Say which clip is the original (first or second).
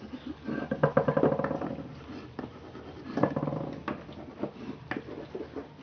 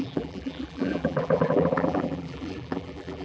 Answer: first